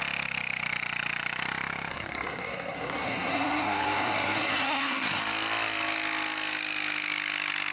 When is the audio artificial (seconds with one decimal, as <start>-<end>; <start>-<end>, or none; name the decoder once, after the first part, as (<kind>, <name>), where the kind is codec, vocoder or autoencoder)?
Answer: 1.9-5.2 (codec, SNAC)